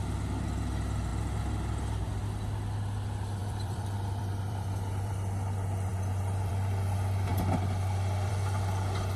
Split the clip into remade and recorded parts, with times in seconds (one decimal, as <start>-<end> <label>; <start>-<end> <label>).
0.0-3.4 recorded; 3.4-5.1 remade; 5.1-9.2 recorded